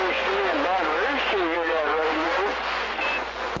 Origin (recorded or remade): remade